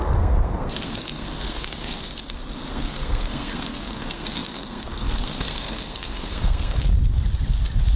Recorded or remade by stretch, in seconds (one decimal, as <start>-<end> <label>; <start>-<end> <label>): 0.0-2.1 remade; 2.1-2.7 recorded; 2.7-7.0 remade; 7.0-8.0 recorded